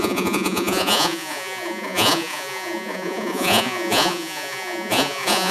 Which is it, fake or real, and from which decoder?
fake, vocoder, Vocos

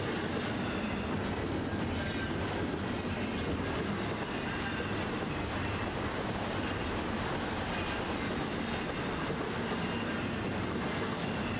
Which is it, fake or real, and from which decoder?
real